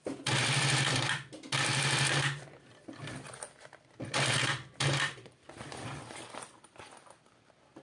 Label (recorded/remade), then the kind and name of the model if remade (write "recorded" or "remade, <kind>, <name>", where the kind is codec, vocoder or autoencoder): remade, vocoder, BigVGAN v2